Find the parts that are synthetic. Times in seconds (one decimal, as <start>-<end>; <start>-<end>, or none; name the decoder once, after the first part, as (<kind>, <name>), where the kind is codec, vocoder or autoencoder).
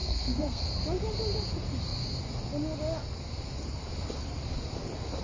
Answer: 0.0-0.7 (codec, SNAC)